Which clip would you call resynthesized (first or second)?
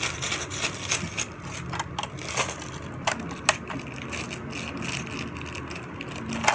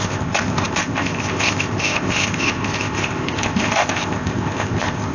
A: second